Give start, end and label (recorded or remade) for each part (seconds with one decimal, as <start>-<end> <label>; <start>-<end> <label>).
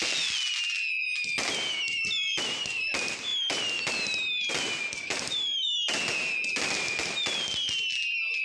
0.0-8.4 recorded